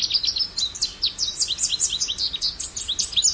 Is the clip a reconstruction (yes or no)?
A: no